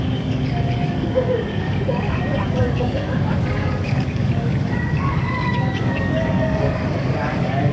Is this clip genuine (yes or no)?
no